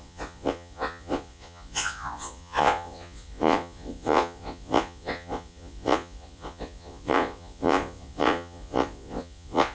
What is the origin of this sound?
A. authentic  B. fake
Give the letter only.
B